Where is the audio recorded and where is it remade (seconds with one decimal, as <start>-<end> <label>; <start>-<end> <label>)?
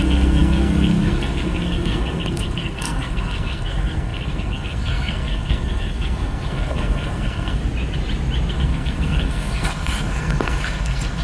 0.0-7.6 remade; 7.6-8.5 recorded; 8.5-11.2 remade